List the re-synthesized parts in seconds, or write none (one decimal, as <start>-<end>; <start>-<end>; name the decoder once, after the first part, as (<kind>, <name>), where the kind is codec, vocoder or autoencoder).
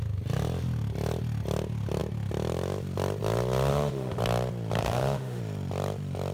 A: 3.7-4.2 (autoencoder, DAC-VAE); 4.8-5.4